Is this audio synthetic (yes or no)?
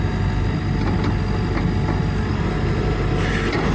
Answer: no